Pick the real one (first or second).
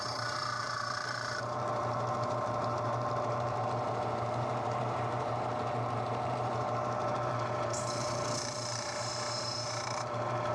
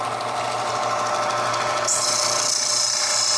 second